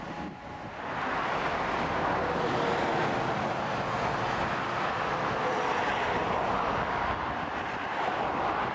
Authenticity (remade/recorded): recorded